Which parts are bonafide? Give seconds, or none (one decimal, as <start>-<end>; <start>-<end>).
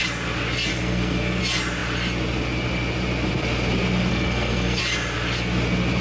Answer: 0.0-0.7; 1.4-4.1; 4.8-6.0